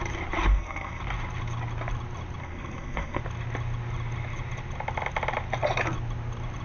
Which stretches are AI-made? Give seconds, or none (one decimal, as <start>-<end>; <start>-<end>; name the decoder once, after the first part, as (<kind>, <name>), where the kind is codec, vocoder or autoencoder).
0.5-1.0 (codec, SNAC); 2.4-3.2